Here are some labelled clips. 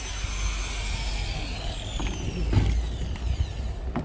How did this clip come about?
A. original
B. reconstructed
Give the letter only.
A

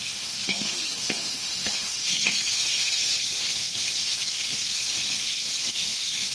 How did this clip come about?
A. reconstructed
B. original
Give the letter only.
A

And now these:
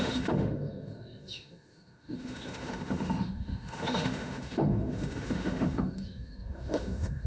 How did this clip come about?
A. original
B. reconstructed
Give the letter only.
B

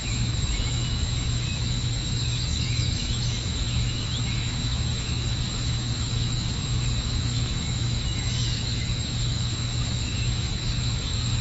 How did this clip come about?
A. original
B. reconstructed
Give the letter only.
B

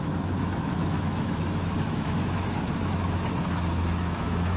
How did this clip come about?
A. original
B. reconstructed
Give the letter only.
B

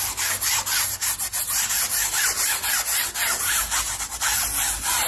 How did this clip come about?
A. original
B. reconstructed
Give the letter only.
A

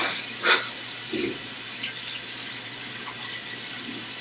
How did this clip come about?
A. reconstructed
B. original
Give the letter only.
B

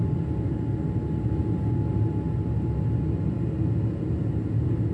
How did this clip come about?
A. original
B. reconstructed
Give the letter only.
A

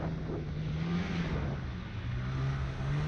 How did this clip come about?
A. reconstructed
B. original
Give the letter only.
B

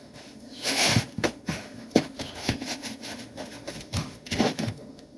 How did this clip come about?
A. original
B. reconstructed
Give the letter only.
B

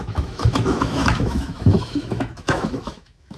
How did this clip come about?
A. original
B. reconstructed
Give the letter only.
B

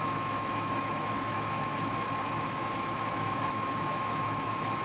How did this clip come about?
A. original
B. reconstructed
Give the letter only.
B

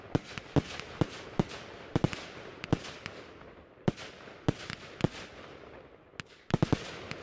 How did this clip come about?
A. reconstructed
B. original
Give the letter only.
B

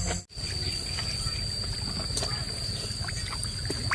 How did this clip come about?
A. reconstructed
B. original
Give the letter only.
B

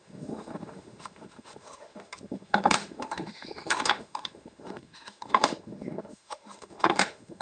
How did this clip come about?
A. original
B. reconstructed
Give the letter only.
B